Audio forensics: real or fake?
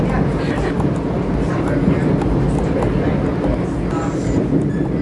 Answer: real